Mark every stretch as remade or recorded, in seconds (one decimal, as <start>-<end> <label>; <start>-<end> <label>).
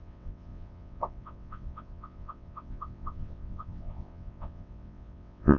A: 0.0-5.6 remade